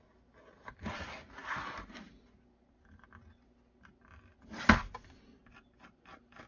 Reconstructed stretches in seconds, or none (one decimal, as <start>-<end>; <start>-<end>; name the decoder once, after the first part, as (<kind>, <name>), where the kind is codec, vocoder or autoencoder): none